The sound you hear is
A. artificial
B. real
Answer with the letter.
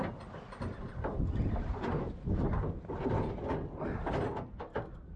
B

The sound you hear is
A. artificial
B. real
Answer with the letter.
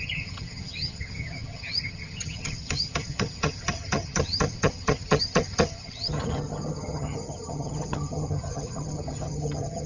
A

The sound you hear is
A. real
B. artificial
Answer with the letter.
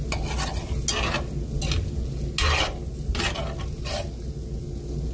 A